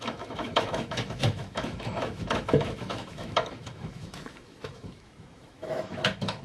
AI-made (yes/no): yes